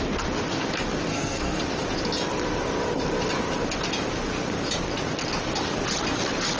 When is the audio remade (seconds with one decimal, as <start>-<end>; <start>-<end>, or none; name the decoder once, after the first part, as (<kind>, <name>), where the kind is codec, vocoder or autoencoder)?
1.1-1.6 (codec, SNAC)